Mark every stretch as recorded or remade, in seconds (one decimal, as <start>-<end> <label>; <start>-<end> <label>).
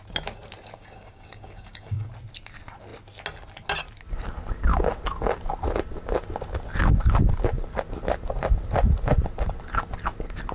0.0-0.8 recorded; 0.8-2.1 remade; 2.1-10.5 recorded